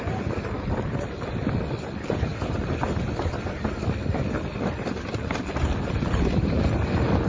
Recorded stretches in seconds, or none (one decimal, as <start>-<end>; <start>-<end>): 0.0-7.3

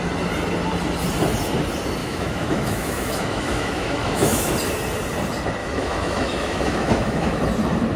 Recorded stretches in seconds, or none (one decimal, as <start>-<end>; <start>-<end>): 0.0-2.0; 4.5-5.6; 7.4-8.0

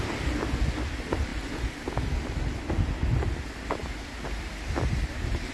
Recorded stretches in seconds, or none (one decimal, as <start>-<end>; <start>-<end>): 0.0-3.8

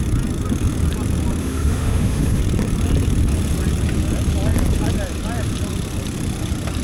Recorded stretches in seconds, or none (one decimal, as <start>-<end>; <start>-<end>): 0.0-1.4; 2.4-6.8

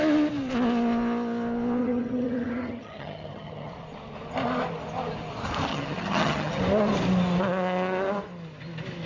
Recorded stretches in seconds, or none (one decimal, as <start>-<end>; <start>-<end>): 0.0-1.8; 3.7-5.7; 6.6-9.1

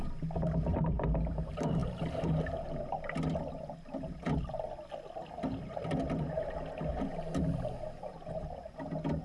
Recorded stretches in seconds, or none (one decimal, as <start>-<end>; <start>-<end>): 0.0-9.2

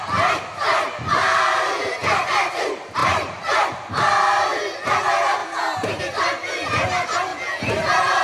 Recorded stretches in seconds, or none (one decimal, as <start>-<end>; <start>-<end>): 0.0-1.2; 2.6-3.0; 4.6-5.4; 6.0-7.3

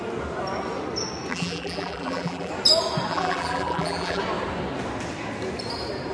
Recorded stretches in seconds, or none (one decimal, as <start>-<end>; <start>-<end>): 0.0-1.3; 2.5-3.1; 4.2-6.1